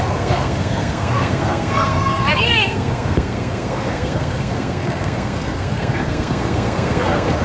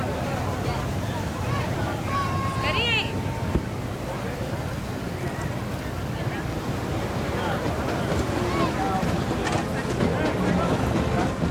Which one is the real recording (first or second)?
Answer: second